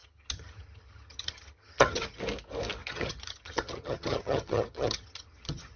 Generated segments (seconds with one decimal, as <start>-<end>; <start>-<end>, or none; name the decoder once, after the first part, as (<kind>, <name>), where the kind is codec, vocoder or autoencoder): 0.0-2.2 (vocoder, HiFi-GAN); 2.8-5.8

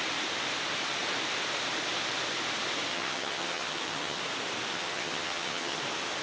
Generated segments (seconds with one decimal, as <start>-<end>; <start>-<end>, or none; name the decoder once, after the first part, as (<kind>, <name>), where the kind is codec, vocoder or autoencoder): 2.9-4.2 (vocoder, HiFi-GAN); 4.7-5.8

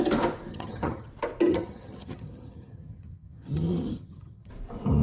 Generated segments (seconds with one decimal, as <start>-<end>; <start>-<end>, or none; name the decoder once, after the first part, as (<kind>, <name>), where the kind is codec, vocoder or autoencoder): 0.5-1.1 (vocoder, HiFi-GAN); 1.5-4.5